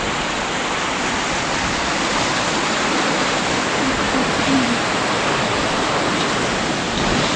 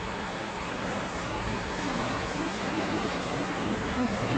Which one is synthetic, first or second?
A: second